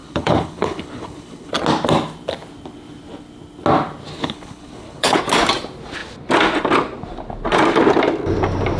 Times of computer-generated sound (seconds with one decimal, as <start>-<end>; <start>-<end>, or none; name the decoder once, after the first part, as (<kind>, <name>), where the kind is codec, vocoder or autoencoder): 0.0-1.5 (codec, HILCodec); 4.1-5.2